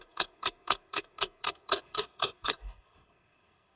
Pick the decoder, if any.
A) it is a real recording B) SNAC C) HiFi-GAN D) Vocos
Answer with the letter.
B